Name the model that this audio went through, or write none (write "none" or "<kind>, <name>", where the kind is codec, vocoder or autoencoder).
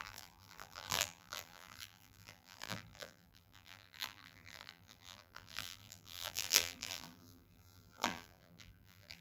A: vocoder, BigVGAN v2